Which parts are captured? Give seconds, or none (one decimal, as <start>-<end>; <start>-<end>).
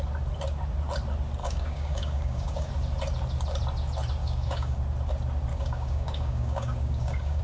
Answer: 0.0-1.4; 2.7-4.2; 4.8-5.5